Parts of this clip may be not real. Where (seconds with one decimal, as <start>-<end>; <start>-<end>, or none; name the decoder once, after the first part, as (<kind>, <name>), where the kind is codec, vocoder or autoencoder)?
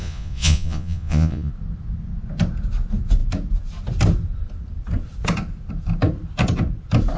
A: 0.0-1.5 (vocoder, Vocos)